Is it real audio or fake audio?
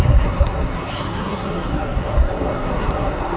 fake